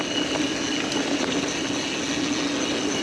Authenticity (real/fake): real